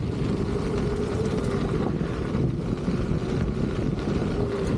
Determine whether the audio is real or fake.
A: real